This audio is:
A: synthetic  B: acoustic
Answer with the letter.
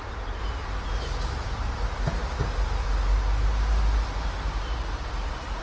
B